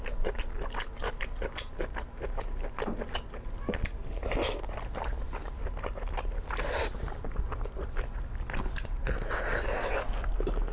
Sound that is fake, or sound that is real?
real